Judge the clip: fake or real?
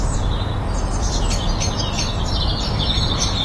real